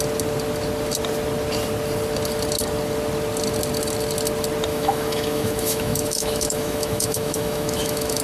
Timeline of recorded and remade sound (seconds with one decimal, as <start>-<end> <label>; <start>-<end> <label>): 0.0-4.7 recorded; 4.7-8.2 remade